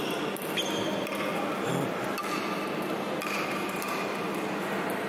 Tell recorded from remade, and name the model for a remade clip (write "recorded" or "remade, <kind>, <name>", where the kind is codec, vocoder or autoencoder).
recorded